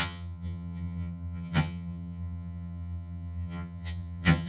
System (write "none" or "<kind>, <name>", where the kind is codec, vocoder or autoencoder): vocoder, HiFi-GAN